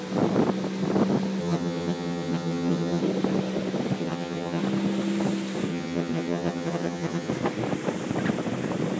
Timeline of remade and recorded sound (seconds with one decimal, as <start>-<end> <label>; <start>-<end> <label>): 0.0-1.4 recorded; 1.4-3.0 remade; 3.0-4.0 recorded; 4.0-4.6 remade; 4.6-5.7 recorded; 5.7-7.3 remade; 7.3-9.0 recorded